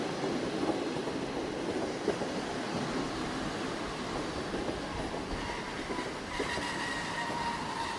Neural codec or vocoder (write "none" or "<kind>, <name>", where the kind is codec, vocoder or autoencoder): none